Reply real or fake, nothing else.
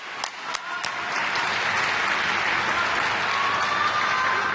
real